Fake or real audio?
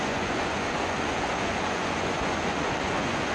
fake